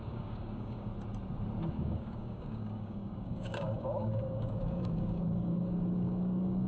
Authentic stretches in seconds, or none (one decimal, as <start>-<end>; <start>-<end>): 0.9-1.7